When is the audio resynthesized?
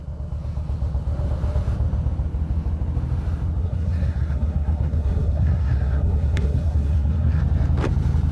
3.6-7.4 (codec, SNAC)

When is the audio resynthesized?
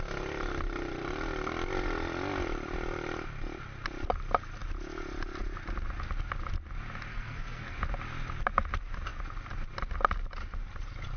7.1-7.8 (codec, SNAC)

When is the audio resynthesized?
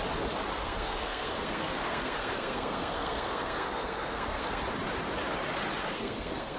0.6-4.6 (codec, SNAC); 5.8-6.6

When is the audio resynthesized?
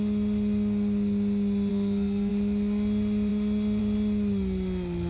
1.7-2.3 (codec, SNAC)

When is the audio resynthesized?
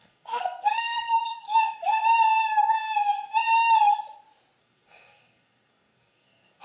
0.0-2.0 (codec, SNAC); 4.6-6.6